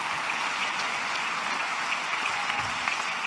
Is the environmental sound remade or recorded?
remade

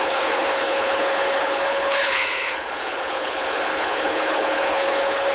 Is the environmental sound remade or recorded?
remade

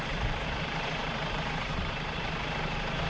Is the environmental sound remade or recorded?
remade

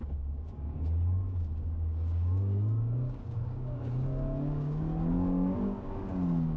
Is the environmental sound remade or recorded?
remade